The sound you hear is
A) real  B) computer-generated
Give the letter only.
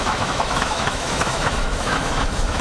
B